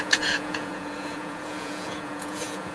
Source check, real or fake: fake